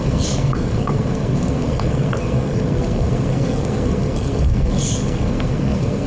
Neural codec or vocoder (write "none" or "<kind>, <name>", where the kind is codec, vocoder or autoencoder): codec, SNAC